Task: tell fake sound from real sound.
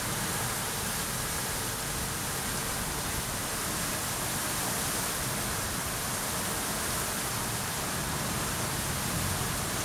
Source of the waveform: real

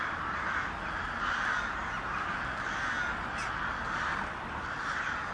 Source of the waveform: real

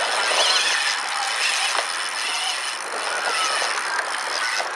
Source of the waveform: real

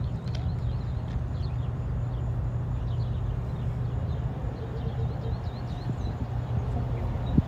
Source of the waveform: real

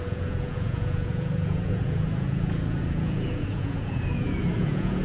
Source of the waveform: fake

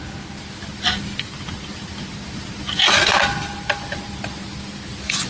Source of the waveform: real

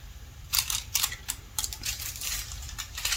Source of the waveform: fake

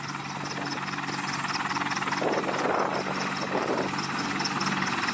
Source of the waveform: real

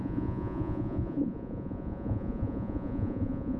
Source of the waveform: fake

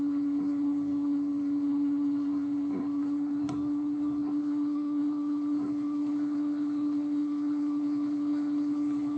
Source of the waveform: fake